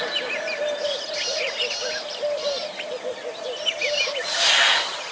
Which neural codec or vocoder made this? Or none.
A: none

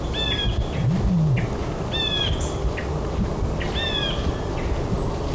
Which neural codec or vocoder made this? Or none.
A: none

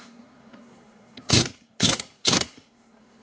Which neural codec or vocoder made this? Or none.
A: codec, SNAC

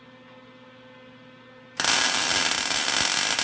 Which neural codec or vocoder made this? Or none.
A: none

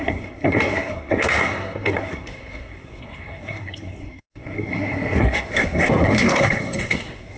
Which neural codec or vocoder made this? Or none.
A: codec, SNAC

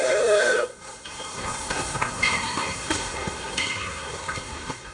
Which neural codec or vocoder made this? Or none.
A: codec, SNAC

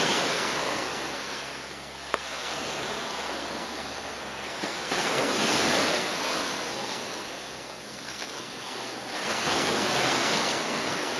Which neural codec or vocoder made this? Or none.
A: codec, SNAC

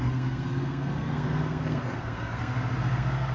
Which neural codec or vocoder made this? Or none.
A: codec, SNAC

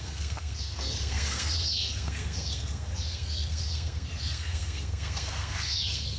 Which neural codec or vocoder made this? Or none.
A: codec, SNAC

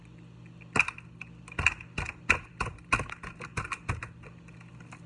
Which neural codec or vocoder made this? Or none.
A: none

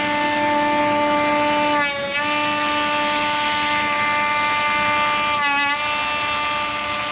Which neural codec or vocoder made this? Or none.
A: none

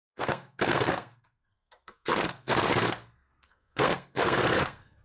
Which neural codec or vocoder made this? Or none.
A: codec, SNAC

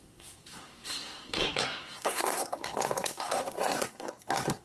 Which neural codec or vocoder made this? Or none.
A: codec, SNAC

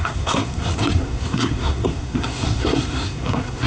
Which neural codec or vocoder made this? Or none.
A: codec, SNAC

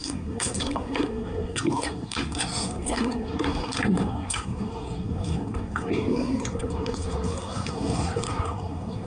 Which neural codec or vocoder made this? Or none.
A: codec, SNAC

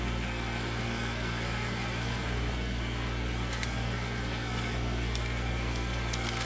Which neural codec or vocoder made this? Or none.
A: codec, SNAC